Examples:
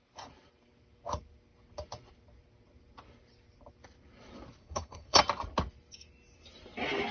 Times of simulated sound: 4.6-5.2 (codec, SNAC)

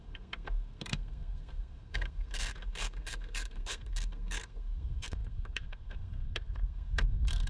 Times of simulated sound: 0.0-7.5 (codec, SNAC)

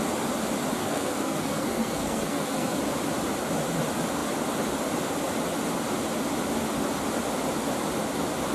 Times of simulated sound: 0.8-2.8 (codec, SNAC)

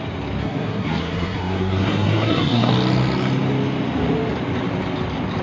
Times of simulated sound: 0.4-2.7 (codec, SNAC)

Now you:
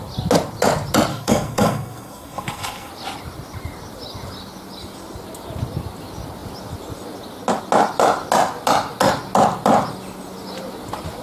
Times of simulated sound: 1.1-2.9 (codec, SNAC)

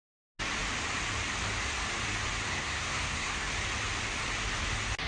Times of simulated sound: 2.5-3.5 (codec, SNAC)